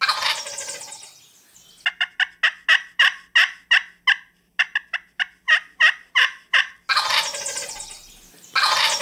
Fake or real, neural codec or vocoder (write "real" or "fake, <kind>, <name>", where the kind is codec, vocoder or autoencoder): real